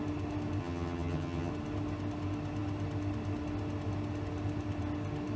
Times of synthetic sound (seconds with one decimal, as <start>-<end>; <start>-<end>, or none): 0.6-1.5